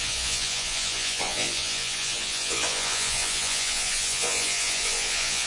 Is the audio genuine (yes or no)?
no